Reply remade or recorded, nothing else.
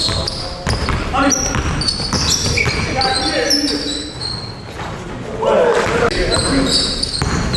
recorded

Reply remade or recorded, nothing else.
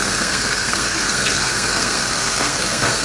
remade